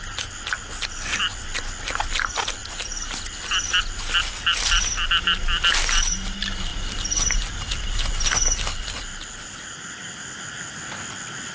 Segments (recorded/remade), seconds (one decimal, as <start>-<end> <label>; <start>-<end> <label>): 0.0-6.7 recorded; 6.7-8.1 remade; 8.1-8.7 recorded; 8.7-10.4 remade; 10.4-11.5 recorded